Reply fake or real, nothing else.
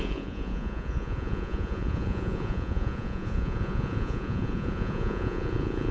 fake